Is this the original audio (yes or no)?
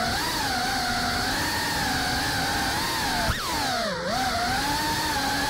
yes